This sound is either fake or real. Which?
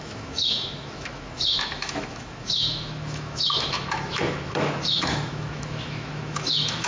fake